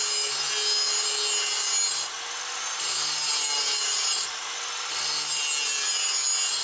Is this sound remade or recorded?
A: recorded